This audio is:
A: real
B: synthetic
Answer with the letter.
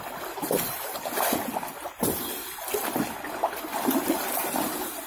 A